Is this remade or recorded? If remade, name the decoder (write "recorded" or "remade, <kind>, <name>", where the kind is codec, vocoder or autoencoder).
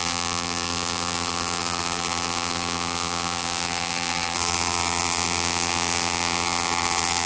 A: remade, vocoder, BigVGAN v2